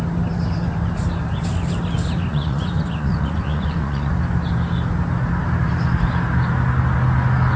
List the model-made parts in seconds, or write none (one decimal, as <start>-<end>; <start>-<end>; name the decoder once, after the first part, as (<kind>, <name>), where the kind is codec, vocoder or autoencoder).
2.3-4.1 (vocoder, Vocos)

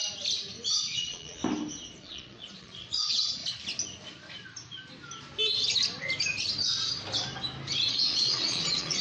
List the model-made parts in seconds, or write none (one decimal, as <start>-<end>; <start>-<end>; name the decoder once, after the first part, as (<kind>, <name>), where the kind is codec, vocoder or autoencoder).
0.8-1.4 (vocoder, Vocos); 2.0-3.4; 7.9-9.0

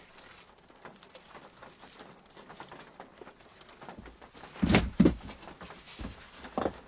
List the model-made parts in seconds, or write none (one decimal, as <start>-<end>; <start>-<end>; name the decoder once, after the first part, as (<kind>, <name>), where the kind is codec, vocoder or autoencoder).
none

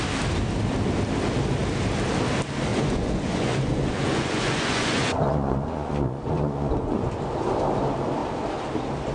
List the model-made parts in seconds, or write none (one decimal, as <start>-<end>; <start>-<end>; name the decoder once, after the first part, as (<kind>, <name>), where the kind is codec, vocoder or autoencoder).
2.7-7.1 (vocoder, Vocos)

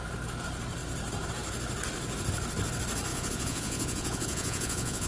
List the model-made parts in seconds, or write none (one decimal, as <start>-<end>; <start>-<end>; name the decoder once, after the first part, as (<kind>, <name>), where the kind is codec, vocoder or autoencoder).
3.1-5.1 (vocoder, Vocos)